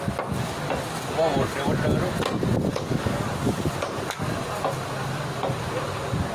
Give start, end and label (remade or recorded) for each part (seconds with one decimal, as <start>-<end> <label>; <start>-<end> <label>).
0.0-2.7 recorded; 2.7-3.7 remade; 3.7-6.3 recorded